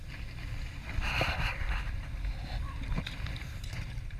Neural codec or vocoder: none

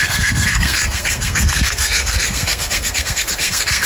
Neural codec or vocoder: codec, SNAC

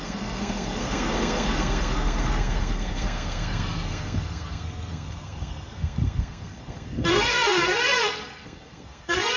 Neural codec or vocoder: codec, SNAC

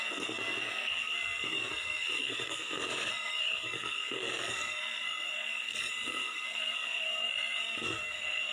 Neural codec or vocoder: codec, SNAC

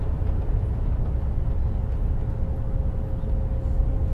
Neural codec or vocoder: none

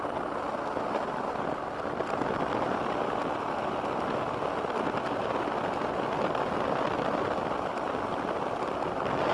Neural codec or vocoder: none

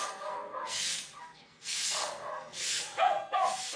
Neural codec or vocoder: codec, SNAC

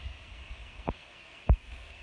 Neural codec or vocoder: codec, SNAC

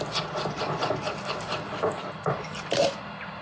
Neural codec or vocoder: none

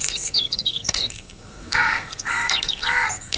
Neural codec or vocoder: codec, SNAC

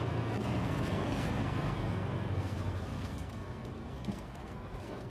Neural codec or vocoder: codec, SNAC